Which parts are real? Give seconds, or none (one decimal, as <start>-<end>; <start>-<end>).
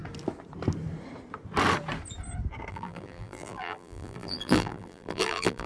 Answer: 0.0-2.7